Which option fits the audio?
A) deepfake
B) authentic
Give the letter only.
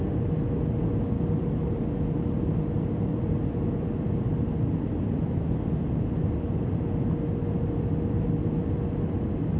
B